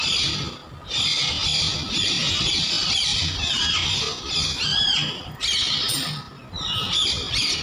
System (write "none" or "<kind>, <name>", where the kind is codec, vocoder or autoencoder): none